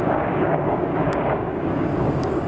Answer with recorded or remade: remade